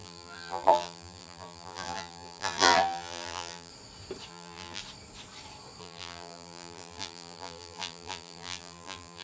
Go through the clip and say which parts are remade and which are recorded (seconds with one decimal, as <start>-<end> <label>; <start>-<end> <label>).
0.0-3.7 remade; 3.7-4.3 recorded; 4.3-4.8 remade; 4.8-5.8 recorded; 5.8-9.2 remade